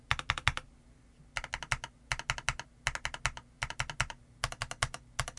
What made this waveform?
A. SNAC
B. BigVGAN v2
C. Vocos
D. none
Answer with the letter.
D